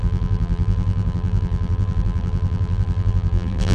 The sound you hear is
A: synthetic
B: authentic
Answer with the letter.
A